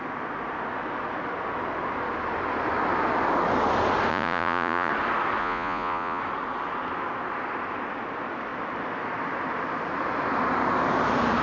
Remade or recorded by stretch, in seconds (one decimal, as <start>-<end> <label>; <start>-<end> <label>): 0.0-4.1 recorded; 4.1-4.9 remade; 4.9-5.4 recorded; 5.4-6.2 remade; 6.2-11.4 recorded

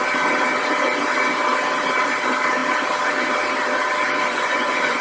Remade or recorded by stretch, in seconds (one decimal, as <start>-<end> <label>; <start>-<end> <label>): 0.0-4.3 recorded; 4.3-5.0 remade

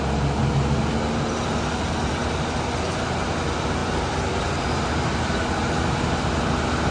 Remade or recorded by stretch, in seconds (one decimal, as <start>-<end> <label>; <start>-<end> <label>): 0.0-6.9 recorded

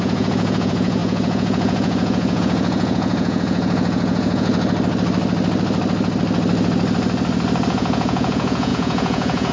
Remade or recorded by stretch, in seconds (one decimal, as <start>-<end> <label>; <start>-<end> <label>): 0.0-4.5 remade; 4.5-7.7 recorded; 7.7-9.5 remade

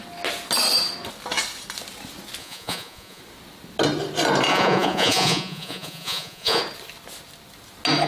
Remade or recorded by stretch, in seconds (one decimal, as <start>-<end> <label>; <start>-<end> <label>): 0.0-2.4 recorded; 2.4-3.2 remade; 3.2-4.5 recorded; 4.5-6.6 remade; 6.6-8.1 recorded